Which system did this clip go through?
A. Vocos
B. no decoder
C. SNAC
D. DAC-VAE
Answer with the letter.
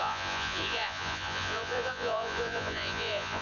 A